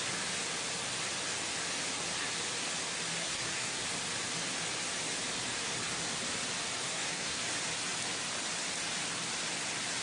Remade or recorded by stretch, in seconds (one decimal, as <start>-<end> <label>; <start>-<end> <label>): 0.0-3.2 recorded; 3.2-3.8 remade; 3.8-6.8 recorded; 6.8-7.4 remade; 7.4-10.0 recorded

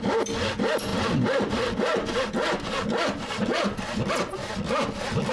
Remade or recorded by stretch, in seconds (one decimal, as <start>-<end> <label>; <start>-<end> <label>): 0.0-5.3 recorded

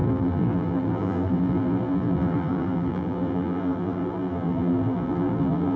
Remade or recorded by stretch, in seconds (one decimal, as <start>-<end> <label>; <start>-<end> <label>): 0.0-5.8 remade

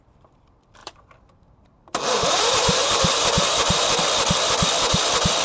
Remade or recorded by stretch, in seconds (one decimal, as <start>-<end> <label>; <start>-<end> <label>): 0.0-0.8 recorded; 0.8-4.0 remade; 4.0-5.4 recorded

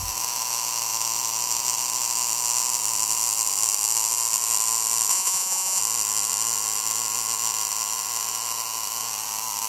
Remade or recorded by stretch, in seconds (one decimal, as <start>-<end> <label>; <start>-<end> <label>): 0.0-5.1 recorded; 5.1-5.8 remade; 5.8-9.7 recorded

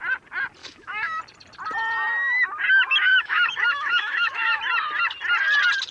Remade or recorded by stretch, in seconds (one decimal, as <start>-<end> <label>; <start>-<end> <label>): 0.0-0.6 recorded; 0.6-1.2 remade; 1.2-3.1 recorded; 3.1-4.6 remade; 4.6-5.9 recorded